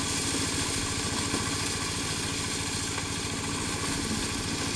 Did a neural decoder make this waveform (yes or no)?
no